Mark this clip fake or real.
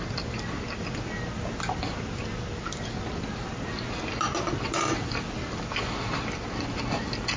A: real